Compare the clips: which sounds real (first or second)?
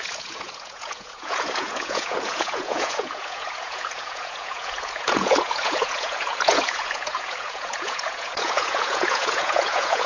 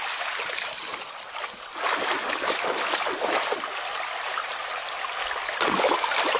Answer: second